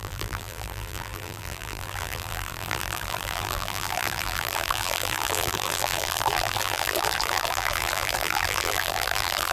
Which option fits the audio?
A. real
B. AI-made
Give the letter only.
B